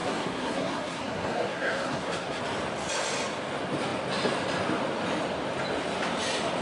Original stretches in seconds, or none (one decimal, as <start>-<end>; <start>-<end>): 2.4-6.6